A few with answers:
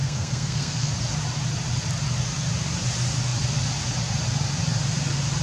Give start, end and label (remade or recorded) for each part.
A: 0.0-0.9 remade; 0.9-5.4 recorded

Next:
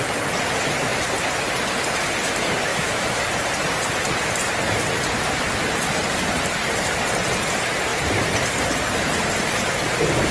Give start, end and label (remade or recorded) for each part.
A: 0.0-2.7 recorded; 2.7-3.2 remade; 3.2-10.3 recorded

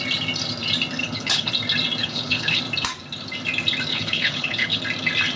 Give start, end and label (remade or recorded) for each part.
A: 0.0-1.0 recorded; 1.0-1.5 remade; 1.5-2.0 recorded; 2.0-2.6 remade; 2.6-3.9 recorded; 3.9-4.8 remade; 4.8-5.4 recorded

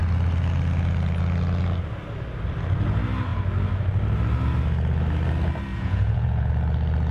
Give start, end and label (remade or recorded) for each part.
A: 0.0-5.7 recorded; 5.7-6.5 remade; 6.5-7.1 recorded

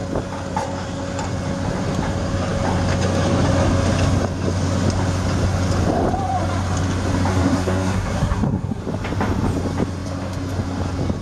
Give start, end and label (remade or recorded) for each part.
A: 0.0-7.3 recorded; 7.3-8.8 remade; 8.8-11.2 recorded

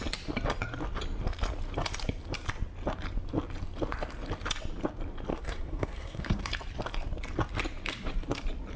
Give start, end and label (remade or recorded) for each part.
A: 0.0-5.3 recorded; 5.3-6.5 remade; 6.5-8.8 recorded

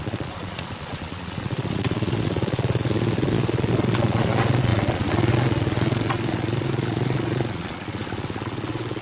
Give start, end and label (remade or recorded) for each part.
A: 0.0-9.0 remade

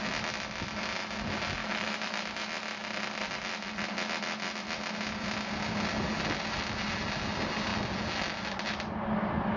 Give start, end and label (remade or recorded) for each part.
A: 0.0-1.6 recorded; 1.6-2.2 remade; 2.2-9.6 recorded